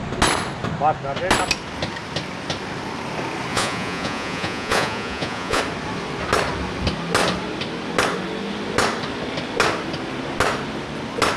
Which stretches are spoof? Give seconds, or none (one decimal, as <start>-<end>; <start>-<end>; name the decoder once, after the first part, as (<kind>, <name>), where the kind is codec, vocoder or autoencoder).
3.5-5.6 (vocoder, Vocos)